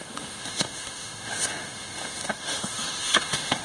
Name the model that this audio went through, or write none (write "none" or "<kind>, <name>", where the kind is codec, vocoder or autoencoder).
autoencoder, DAC-VAE